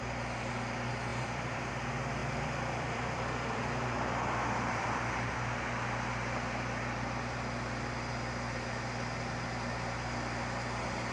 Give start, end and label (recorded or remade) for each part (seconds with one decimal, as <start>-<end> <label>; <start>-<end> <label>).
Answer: 0.0-1.1 recorded; 1.1-1.7 remade; 1.7-2.2 recorded; 2.2-5.3 remade; 5.3-11.1 recorded